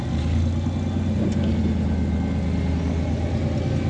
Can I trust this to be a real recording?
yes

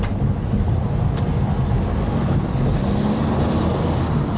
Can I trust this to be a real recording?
yes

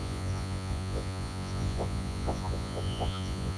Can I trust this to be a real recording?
no